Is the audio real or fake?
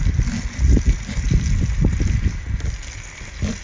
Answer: real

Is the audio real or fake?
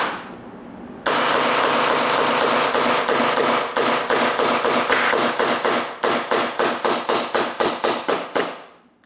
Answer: real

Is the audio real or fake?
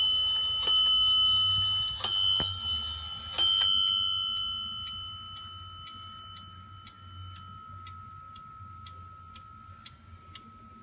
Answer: real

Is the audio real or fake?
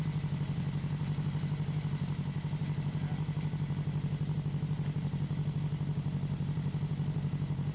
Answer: real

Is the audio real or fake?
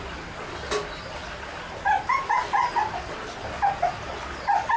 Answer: real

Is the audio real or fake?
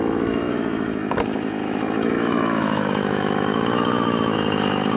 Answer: fake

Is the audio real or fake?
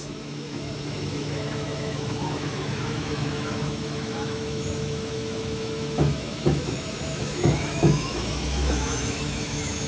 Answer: fake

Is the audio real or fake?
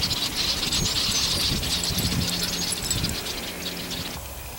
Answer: real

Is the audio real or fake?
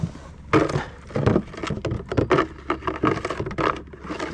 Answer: real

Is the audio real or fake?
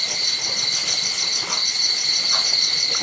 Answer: real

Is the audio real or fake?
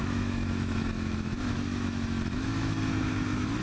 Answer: fake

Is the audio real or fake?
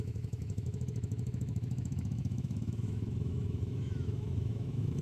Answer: fake